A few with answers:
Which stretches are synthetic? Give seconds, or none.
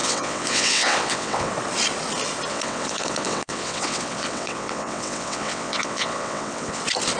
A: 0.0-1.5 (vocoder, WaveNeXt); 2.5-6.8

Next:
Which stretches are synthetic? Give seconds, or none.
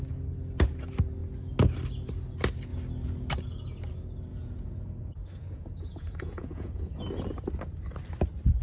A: 4.3-7.0 (vocoder, Vocos)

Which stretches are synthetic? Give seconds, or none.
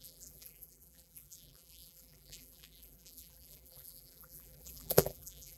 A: 0.0-5.6 (vocoder, BigVGAN v2)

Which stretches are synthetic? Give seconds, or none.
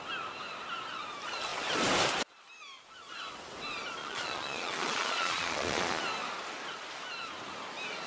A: 4.0-6.0 (vocoder, Vocos)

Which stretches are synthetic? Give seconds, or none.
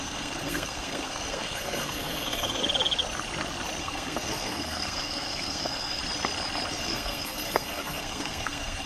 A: 0.0-2.6 (codec, SNAC); 3.8-6.0; 6.7-8.9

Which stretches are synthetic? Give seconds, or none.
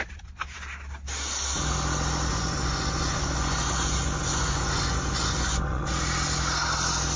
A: 2.3-5.9 (vocoder, Vocos)